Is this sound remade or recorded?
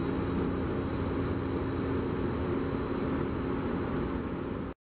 recorded